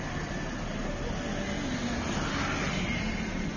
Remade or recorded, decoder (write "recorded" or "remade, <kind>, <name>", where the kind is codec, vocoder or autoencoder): recorded